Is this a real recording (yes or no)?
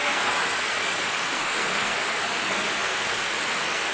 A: no